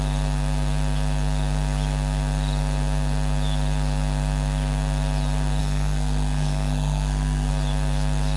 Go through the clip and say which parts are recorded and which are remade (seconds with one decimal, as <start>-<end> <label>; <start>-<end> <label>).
0.0-5.6 recorded; 5.6-7.5 remade; 7.5-8.4 recorded